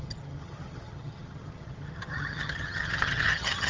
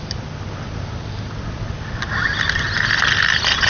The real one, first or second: second